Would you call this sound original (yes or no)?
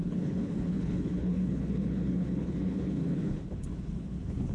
no